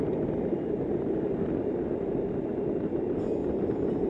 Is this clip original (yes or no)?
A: yes